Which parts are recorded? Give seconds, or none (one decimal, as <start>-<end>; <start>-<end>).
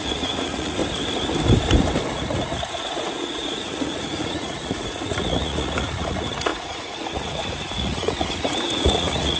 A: 0.8-2.1